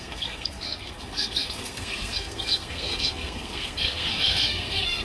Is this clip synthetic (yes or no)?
yes